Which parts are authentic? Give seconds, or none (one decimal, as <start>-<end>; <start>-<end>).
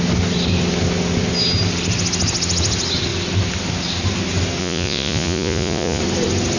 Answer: 0.0-4.6; 6.0-6.6